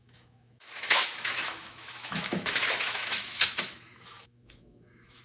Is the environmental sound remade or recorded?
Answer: remade